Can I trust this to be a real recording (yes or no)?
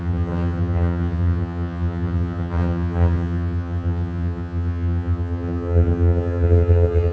no